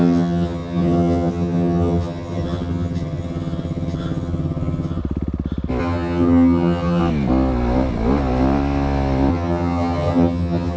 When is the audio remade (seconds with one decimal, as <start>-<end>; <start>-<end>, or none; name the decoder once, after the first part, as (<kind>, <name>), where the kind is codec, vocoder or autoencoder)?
0.0-5.0 (vocoder, HiFi-GAN); 5.8-7.0; 9.3-10.8